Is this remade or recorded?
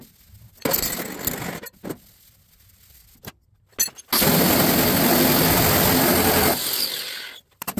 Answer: recorded